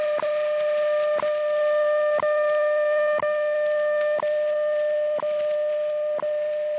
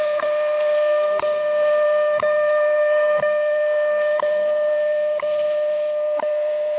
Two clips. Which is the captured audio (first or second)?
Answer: first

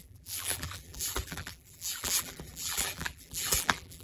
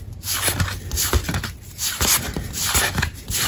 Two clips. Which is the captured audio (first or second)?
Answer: second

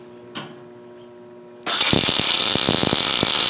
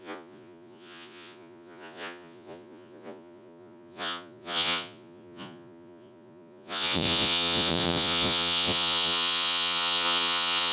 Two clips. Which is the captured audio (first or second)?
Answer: first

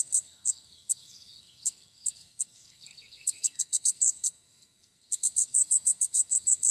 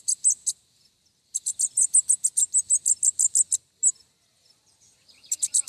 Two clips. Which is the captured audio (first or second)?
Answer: second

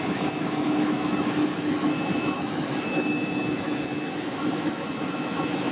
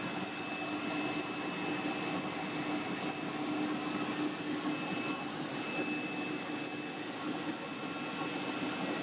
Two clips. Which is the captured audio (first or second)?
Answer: second